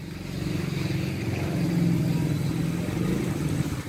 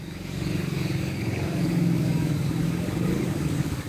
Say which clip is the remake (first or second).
second